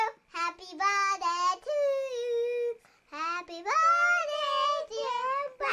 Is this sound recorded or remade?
recorded